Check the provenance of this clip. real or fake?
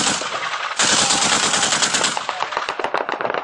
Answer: real